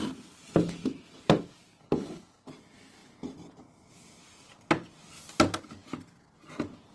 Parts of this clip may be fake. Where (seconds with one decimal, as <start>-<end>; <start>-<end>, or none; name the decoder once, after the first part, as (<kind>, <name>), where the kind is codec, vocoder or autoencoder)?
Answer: 1.8-2.5 (codec, HILCodec)

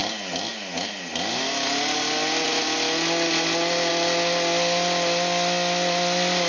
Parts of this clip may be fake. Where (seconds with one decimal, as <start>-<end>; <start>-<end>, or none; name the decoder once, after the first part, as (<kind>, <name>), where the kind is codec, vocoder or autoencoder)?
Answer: none

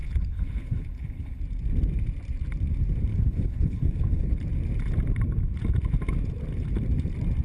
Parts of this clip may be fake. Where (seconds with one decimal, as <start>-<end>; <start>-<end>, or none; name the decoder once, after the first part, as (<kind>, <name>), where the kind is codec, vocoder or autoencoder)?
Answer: 0.0-1.4 (codec, HILCodec); 3.1-4.3

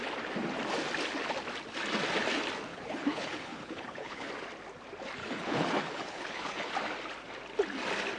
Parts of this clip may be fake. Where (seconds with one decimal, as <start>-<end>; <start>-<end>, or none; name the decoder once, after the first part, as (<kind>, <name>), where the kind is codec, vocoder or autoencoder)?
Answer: 2.7-4.3 (codec, HILCodec); 5.2-6.7

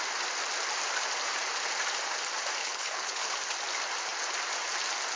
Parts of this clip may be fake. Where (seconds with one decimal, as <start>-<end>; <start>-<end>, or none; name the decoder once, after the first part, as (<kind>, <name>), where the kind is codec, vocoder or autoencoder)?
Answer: 2.6-3.3 (codec, HILCodec)

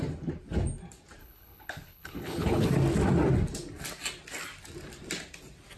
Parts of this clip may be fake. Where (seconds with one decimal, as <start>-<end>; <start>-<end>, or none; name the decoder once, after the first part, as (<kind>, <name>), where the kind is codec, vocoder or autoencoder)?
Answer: 1.2-2.7 (codec, HILCodec)

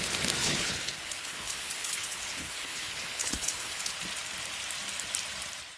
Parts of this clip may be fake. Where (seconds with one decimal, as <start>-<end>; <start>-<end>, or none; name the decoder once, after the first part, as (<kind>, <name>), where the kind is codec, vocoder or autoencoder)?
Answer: 0.4-3.9 (codec, HILCodec)